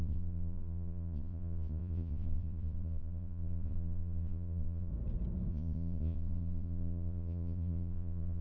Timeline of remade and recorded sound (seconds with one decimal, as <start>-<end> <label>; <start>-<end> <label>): 0.0-4.9 remade; 4.9-5.5 recorded; 5.5-8.4 remade

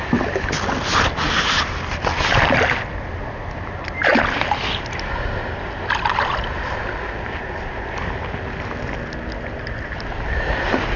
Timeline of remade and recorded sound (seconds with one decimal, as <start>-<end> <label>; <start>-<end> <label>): 0.0-11.0 recorded